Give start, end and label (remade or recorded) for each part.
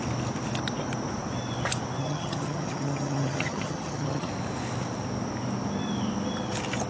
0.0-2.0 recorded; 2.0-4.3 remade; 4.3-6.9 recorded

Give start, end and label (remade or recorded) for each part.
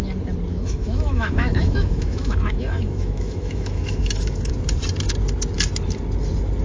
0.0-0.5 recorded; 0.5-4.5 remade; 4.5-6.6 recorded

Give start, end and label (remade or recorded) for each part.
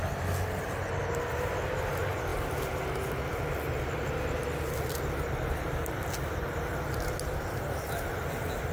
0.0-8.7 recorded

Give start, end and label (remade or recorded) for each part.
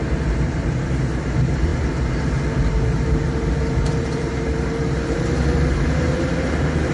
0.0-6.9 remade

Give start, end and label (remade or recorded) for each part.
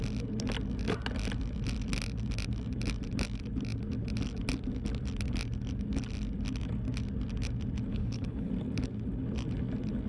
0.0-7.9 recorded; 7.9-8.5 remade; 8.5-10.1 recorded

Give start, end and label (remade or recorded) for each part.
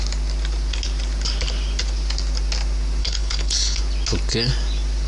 0.0-3.0 recorded; 3.0-3.8 remade; 3.8-5.1 recorded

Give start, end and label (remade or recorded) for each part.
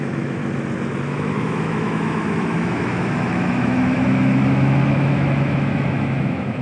0.0-0.4 remade; 0.4-1.1 recorded; 1.1-6.6 remade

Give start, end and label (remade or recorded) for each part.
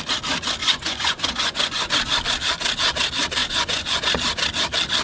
0.0-0.6 recorded; 0.6-1.9 remade; 1.9-3.4 recorded; 3.4-4.0 remade; 4.0-5.0 recorded